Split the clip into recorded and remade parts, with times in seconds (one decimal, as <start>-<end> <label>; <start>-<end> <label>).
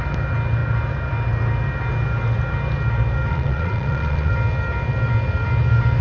0.0-3.3 recorded; 3.3-4.3 remade; 4.3-6.0 recorded